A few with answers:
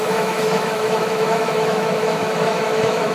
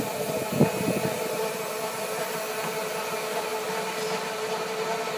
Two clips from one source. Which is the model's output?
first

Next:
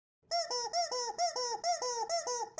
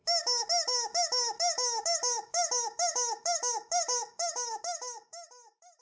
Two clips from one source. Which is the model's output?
second